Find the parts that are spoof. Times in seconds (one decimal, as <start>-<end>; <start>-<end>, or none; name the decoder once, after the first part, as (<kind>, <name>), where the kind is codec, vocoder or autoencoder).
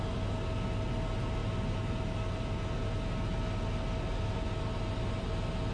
none